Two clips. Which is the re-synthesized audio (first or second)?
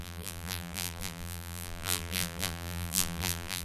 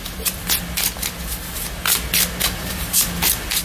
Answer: first